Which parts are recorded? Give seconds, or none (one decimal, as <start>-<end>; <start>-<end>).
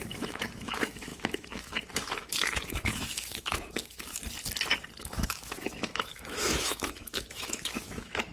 4.2-5.0